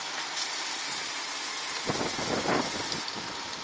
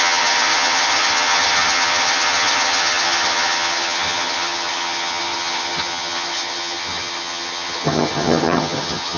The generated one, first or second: second